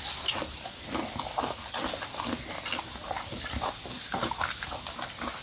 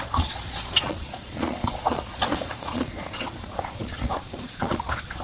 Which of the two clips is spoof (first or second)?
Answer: second